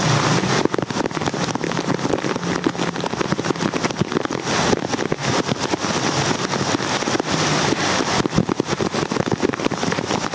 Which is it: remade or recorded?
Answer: recorded